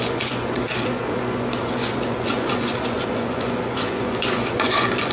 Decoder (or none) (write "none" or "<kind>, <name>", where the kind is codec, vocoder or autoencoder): vocoder, Vocos